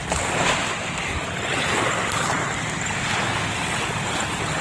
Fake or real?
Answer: real